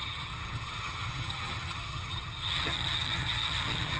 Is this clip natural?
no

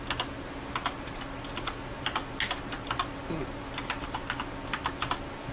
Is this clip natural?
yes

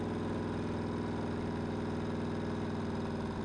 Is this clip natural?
yes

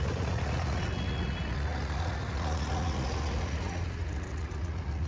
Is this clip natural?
no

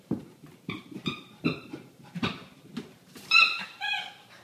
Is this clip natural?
no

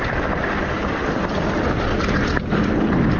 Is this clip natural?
yes